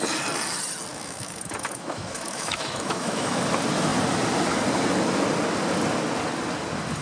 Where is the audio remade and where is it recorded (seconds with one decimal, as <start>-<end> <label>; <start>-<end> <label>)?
0.0-0.9 recorded; 0.9-3.4 remade; 3.4-7.0 recorded